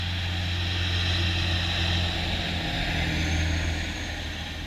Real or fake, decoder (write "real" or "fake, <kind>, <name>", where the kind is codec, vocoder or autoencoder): real